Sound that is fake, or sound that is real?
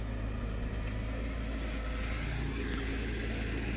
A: real